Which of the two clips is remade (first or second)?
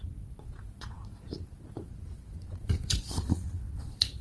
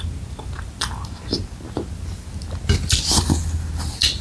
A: first